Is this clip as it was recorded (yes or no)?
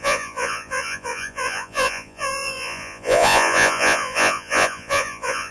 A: no